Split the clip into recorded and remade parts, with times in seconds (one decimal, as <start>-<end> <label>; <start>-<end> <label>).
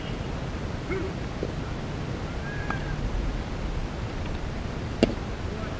0.0-5.8 recorded